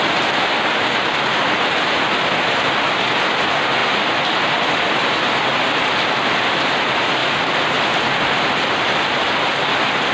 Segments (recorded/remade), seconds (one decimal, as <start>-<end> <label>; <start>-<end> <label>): 0.0-10.1 recorded